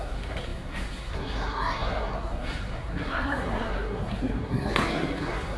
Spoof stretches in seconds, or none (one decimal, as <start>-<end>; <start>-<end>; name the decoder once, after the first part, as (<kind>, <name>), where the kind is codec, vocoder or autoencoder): 0.0-5.6 (codec, SNAC)